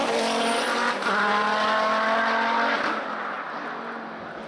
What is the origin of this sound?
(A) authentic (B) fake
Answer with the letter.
A